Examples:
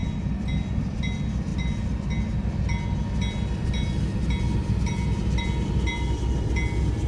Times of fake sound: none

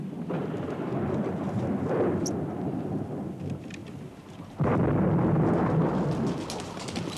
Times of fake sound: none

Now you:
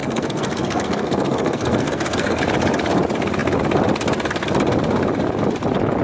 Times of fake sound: 0.0-2.4 (codec, SNAC)